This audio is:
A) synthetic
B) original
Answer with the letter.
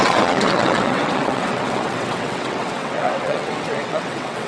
A